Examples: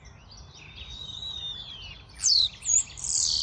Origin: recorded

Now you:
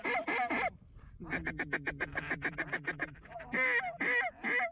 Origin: recorded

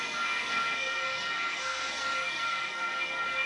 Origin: remade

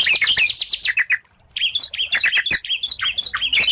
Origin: recorded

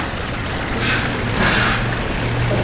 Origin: recorded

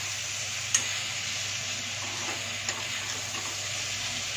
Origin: recorded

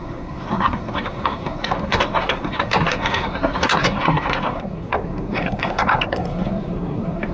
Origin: remade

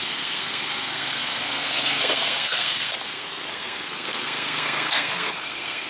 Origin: remade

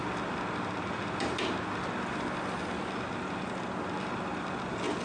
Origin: recorded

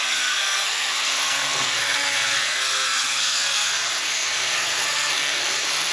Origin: remade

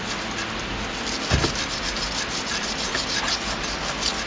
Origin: recorded